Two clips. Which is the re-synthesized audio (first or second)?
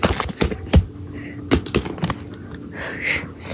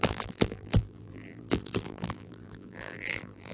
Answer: second